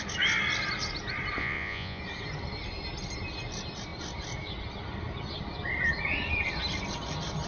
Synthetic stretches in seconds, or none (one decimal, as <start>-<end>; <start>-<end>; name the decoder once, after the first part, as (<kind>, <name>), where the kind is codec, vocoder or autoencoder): 1.4-2.0 (vocoder, Vocos)